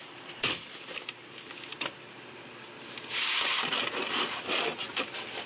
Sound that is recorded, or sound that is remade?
recorded